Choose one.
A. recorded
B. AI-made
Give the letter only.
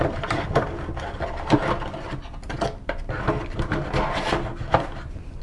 A